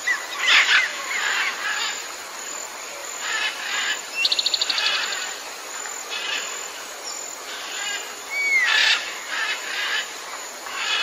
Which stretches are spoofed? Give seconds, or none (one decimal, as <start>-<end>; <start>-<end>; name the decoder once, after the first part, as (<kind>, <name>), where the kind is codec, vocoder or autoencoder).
3.0-3.9 (vocoder, BigVGAN v2)